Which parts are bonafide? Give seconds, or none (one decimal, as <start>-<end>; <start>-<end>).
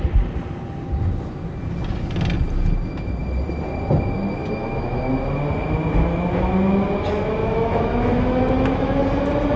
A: 0.0-4.4; 5.1-7.4; 9.0-9.6